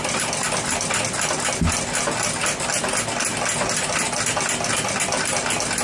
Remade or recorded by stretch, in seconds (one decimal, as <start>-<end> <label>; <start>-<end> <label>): 0.0-5.8 recorded